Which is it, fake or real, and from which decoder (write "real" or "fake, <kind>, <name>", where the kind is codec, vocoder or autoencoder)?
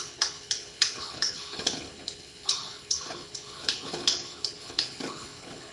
fake, codec, HILCodec